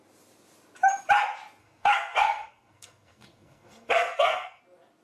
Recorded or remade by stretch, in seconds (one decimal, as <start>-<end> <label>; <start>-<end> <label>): 0.0-1.6 recorded; 1.6-4.6 remade; 4.6-5.0 recorded